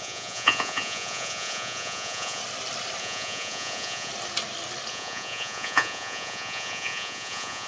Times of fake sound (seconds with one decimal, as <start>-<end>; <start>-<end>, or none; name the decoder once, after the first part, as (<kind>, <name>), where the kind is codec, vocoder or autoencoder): 0.0-2.4 (vocoder, Vocos); 3.0-4.1; 4.9-7.7